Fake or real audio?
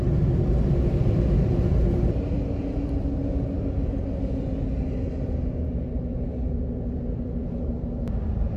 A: real